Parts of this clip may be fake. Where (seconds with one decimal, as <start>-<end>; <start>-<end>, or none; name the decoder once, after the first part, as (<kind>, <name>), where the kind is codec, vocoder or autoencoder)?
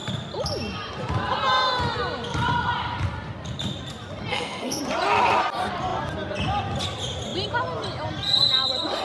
4.3-4.8 (codec, SNAC)